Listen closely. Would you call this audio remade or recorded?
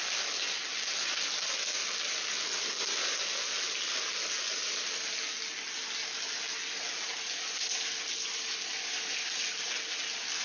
recorded